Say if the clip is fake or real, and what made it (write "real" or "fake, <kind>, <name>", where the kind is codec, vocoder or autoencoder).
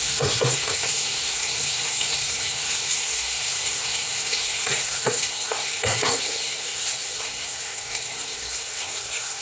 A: fake, codec, SNAC